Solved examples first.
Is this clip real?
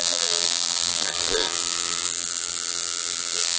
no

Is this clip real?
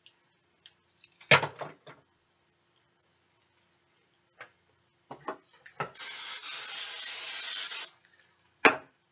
yes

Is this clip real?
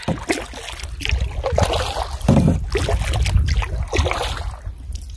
yes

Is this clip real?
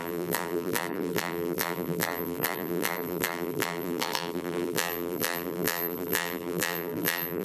no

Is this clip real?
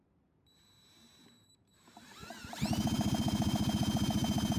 no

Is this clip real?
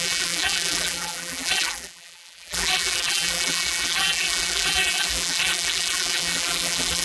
no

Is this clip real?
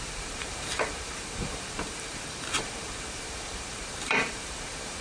no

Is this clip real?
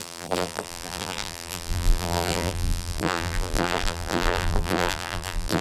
no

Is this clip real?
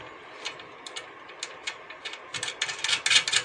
yes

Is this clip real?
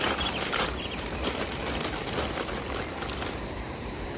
yes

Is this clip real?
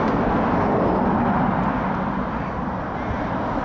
yes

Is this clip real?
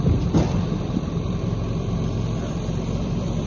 no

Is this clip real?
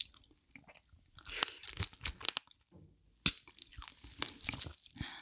yes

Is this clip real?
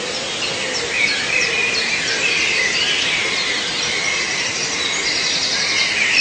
yes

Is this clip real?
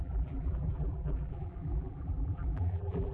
no